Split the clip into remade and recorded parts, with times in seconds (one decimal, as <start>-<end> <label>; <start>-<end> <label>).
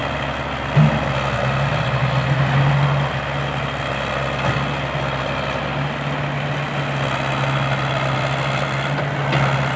0.0-9.8 recorded